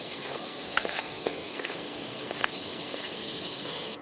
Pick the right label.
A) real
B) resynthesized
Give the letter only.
B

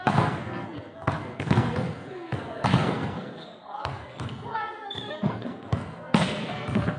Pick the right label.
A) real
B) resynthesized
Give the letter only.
B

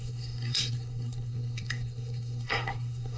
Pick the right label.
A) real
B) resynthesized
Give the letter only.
B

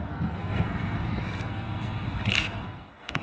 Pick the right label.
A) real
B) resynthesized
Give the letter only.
B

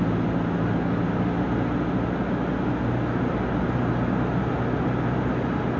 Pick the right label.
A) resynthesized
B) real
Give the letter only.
B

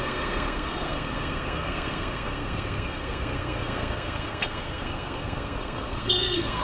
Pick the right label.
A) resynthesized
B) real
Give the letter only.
A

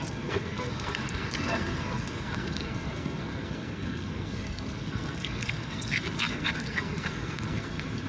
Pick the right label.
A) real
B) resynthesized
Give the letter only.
B